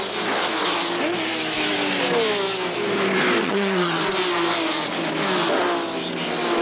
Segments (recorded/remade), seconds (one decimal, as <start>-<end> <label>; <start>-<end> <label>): 0.0-3.4 recorded; 3.4-4.0 remade; 4.0-6.6 recorded

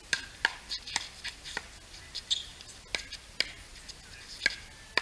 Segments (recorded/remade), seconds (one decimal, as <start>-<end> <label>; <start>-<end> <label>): 0.0-5.0 recorded

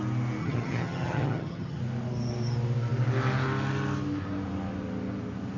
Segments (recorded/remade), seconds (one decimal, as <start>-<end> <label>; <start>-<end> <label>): 0.0-0.4 recorded; 0.4-1.8 remade; 1.8-5.6 recorded